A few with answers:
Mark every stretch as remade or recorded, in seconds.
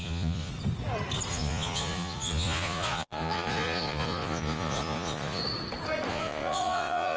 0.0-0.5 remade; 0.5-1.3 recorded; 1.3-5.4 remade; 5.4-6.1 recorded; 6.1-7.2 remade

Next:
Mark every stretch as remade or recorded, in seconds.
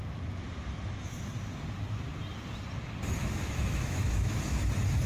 0.0-3.2 recorded; 3.2-4.6 remade; 4.6-5.1 recorded